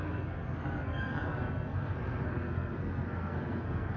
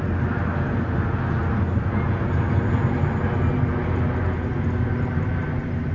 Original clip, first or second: second